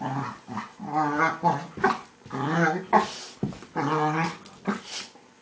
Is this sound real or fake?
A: real